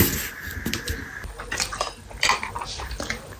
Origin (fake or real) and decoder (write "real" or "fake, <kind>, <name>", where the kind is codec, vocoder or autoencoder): real